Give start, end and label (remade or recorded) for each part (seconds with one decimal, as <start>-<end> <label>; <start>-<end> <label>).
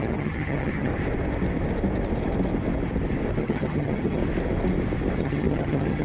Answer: 0.0-0.9 remade; 0.9-3.4 recorded; 3.4-4.2 remade; 4.2-5.2 recorded; 5.2-6.0 remade